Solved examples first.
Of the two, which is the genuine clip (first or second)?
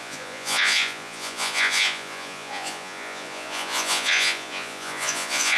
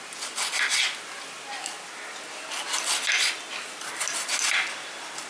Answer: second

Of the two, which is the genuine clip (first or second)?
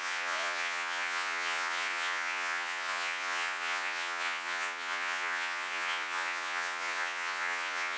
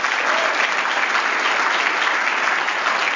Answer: second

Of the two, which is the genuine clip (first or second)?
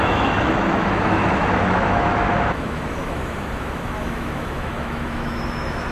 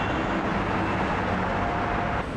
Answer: second